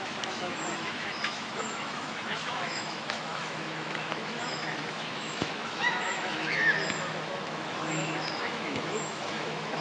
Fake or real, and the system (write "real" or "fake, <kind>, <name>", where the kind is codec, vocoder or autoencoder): fake, autoencoder, DAC-VAE